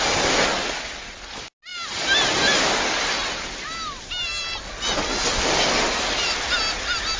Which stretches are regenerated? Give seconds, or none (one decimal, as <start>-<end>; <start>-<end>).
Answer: none